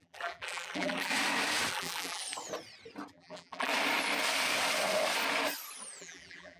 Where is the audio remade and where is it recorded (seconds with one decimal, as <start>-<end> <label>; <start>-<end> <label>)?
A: 0.0-1.1 remade; 1.1-1.7 recorded; 1.7-2.2 remade; 2.2-3.1 recorded; 3.1-3.7 remade; 3.7-6.0 recorded; 6.0-6.6 remade